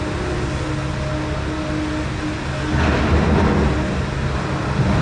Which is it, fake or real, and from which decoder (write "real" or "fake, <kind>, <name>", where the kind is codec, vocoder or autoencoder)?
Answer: real